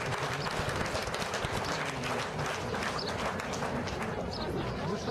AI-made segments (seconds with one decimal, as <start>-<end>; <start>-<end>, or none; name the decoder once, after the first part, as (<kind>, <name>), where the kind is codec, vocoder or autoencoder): none